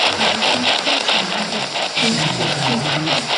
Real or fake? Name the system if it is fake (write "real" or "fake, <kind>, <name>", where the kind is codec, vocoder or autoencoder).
fake, vocoder, BigVGAN v2